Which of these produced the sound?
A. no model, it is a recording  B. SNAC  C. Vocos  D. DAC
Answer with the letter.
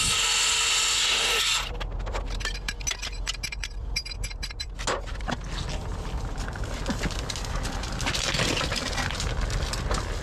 A